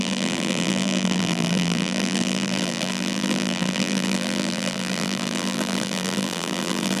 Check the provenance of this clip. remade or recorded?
remade